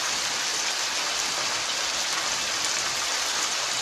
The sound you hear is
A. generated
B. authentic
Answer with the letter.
B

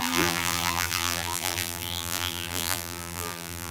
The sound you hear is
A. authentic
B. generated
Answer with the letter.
B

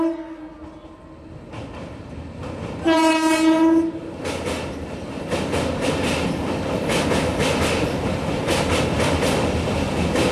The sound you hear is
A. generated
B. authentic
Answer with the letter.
B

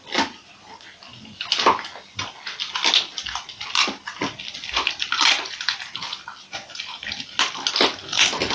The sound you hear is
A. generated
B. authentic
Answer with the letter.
B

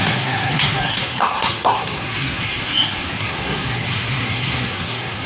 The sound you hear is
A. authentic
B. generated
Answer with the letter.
B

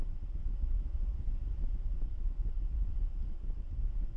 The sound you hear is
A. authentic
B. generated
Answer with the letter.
A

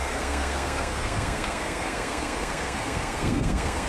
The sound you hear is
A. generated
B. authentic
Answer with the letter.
A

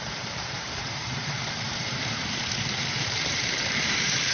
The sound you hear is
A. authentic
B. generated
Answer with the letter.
B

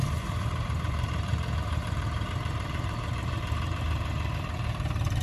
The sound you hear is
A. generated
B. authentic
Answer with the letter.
A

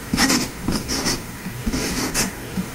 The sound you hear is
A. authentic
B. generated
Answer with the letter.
B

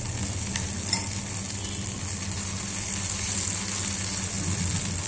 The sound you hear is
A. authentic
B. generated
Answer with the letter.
A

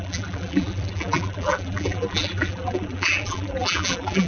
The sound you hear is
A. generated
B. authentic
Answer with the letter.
A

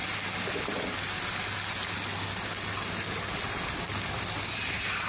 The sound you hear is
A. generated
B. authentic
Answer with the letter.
B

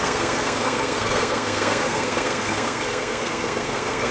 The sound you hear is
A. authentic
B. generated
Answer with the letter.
B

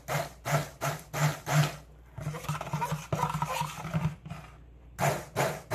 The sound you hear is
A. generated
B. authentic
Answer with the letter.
B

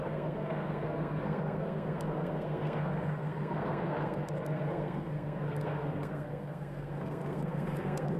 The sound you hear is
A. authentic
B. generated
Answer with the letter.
B